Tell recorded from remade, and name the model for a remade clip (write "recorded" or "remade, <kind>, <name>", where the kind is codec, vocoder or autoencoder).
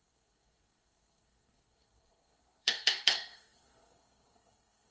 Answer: remade, codec, SNAC